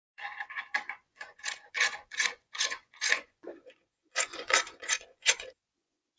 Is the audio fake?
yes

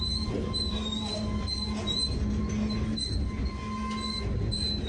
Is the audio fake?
no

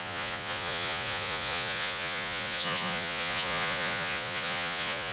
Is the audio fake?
yes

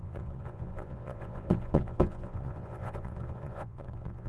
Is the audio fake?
yes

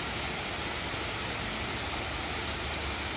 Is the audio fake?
no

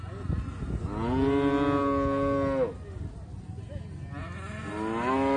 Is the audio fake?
no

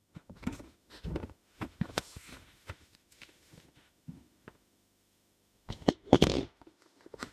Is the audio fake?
yes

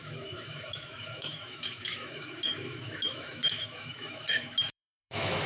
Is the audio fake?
yes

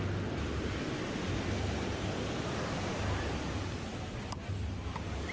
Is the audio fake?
no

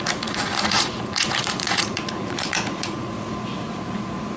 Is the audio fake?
yes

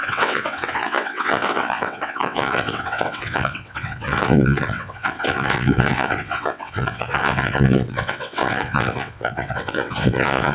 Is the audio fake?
yes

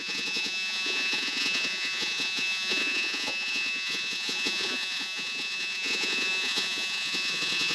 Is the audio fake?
yes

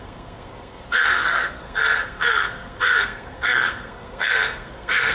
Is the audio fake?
yes